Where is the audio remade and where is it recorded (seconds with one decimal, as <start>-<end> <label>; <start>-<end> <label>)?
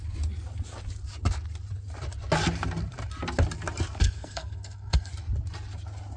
0.0-4.0 recorded; 4.0-5.1 remade; 5.1-6.2 recorded